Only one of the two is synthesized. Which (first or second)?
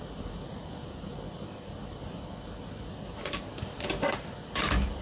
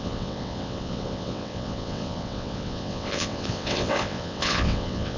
second